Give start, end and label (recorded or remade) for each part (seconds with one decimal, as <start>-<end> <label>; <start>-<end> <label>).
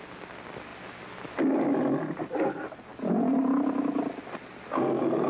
0.0-5.3 recorded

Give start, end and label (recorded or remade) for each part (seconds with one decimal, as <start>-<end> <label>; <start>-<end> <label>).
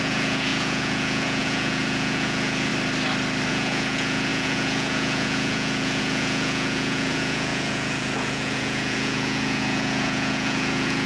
0.0-2.7 remade; 2.7-3.5 recorded; 3.5-11.1 remade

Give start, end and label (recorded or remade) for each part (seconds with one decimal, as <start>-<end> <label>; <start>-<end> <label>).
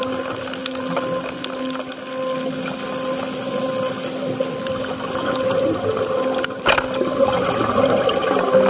0.0-8.7 recorded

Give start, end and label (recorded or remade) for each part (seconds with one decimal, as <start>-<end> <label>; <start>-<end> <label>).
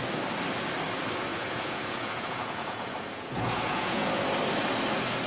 0.0-1.3 recorded; 1.3-4.2 remade; 4.2-5.3 recorded